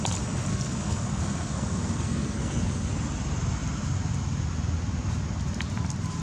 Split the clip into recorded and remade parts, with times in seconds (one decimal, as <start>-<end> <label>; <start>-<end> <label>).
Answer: 0.0-0.5 recorded; 0.5-2.9 remade; 2.9-6.2 recorded